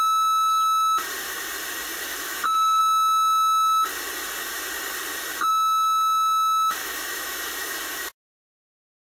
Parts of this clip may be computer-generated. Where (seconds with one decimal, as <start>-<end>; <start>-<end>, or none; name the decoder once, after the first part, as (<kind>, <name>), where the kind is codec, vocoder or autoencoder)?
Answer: 2.1-2.8 (autoencoder, DAC-VAE); 6.8-7.8